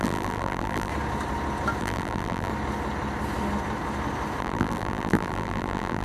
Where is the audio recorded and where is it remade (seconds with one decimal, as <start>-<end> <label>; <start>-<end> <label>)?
0.0-0.9 remade; 0.9-1.8 recorded; 1.8-2.5 remade; 2.5-4.4 recorded; 4.4-6.0 remade